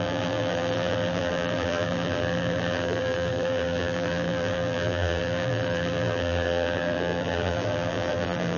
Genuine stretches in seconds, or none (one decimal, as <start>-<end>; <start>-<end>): none